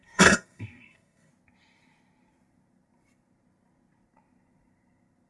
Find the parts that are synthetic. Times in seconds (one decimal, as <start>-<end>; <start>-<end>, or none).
0.0-1.3